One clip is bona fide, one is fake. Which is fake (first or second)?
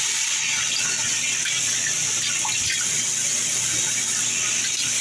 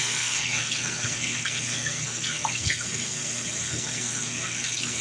second